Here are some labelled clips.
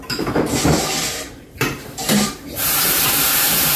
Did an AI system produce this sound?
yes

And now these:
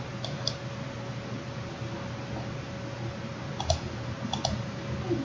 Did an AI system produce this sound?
no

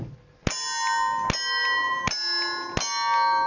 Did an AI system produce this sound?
no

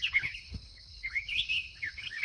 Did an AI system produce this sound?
yes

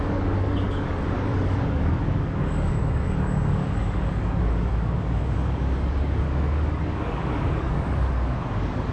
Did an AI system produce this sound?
yes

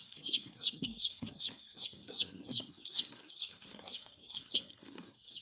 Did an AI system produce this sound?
yes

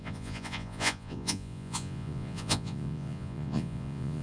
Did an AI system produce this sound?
yes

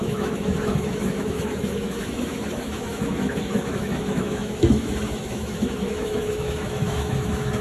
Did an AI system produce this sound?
yes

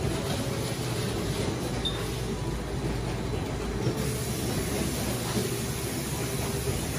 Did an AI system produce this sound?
no